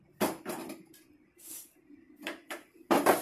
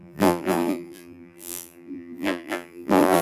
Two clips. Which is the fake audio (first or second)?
second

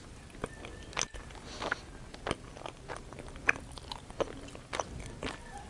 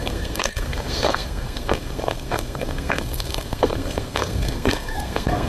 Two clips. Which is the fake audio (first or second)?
second